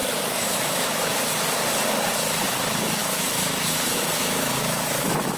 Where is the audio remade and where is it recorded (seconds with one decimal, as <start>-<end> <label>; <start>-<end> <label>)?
0.0-1.2 remade; 1.2-3.0 recorded; 3.0-5.4 remade